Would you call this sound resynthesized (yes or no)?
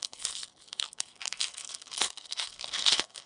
yes